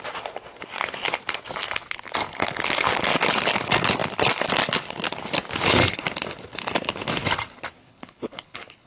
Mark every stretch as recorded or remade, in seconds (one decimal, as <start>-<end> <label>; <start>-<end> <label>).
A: 0.0-2.2 recorded; 2.2-3.0 remade; 3.0-7.9 recorded; 7.9-8.9 remade